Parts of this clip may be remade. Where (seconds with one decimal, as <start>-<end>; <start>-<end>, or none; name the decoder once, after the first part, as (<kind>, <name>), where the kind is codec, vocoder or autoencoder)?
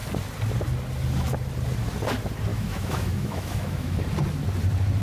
2.5-4.0 (autoencoder, DAC-VAE)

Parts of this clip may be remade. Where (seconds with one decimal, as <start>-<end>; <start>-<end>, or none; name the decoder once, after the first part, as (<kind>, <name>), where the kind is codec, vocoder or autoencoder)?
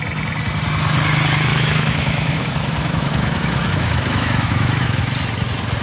1.5-5.0 (autoencoder, DAC-VAE)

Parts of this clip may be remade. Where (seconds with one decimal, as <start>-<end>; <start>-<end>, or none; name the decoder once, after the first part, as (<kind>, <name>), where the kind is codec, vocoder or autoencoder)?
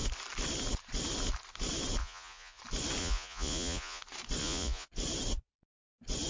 2.0-2.6 (vocoder, Vocos); 3.0-4.0; 4.4-4.9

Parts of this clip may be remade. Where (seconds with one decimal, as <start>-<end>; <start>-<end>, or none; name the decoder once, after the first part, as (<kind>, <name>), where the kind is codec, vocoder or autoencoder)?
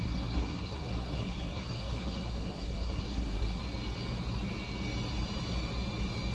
0.0-3.6 (codec, SNAC)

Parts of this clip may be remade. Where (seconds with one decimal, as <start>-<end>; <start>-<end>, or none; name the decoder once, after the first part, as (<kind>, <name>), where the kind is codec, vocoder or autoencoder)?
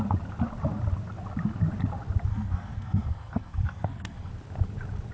2.3-4.3 (codec, SNAC)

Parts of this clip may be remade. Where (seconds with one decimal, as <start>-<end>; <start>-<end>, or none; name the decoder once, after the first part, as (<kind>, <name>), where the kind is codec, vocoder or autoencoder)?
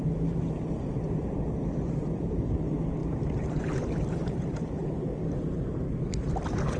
3.0-6.3 (vocoder, BigVGAN v2)